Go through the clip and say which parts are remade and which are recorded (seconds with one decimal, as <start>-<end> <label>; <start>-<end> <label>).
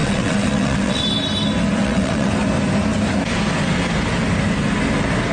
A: 0.0-1.0 remade; 1.0-1.8 recorded; 1.8-2.3 remade; 2.3-5.3 recorded